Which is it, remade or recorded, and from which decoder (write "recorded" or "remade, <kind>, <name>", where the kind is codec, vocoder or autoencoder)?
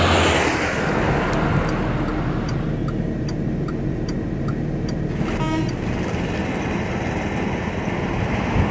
recorded